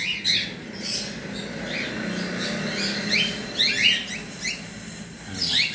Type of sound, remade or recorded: recorded